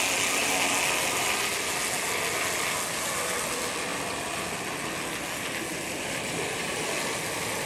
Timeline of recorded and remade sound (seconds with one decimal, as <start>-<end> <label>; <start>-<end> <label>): 0.0-7.7 recorded